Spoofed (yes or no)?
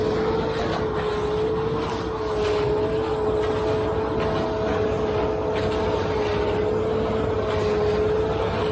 no